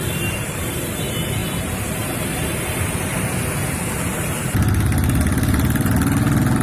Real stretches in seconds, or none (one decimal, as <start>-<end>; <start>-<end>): 0.0-1.4; 4.4-6.6